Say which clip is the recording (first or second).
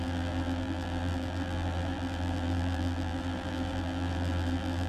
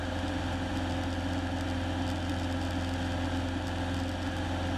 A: second